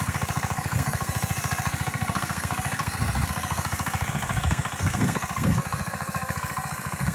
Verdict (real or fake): fake